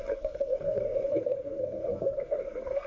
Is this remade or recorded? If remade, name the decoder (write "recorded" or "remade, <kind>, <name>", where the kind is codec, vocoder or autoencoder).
remade, codec, SNAC